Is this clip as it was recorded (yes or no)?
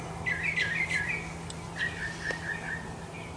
yes